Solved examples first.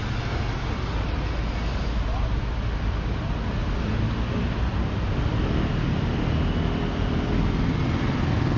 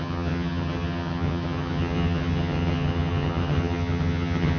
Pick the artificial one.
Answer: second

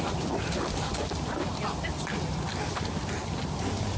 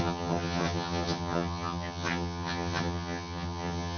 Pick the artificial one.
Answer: second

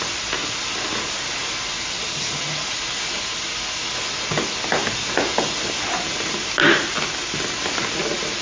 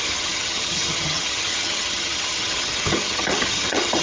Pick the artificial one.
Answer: second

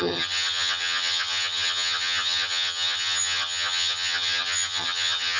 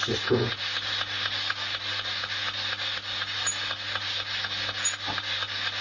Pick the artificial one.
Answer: first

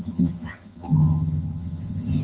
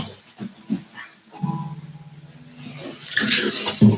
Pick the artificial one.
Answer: first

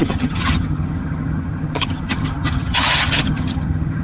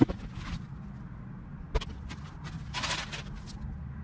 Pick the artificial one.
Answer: first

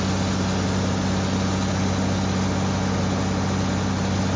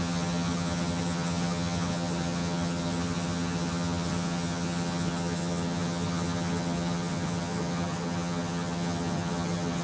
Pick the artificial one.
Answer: second